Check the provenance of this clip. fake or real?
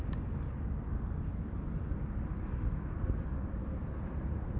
real